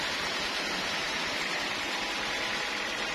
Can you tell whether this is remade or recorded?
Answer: recorded